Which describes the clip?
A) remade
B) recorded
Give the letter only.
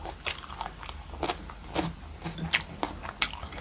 B